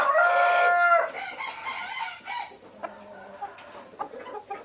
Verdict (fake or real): real